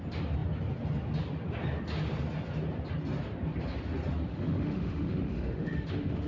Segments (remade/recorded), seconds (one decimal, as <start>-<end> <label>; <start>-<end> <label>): 0.0-4.3 recorded; 4.3-6.3 remade